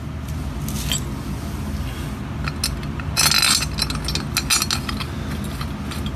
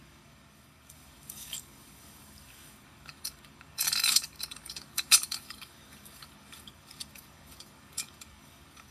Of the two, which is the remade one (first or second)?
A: second